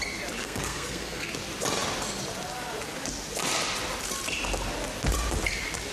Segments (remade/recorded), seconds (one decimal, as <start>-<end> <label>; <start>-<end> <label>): 0.0-0.4 recorded; 0.4-1.3 remade; 1.3-5.9 recorded

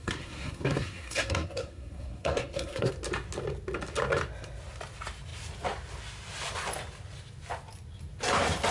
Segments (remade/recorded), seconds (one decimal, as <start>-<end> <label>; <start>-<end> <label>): 0.0-2.9 remade; 2.9-8.7 recorded